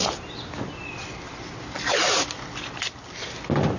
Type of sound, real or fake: real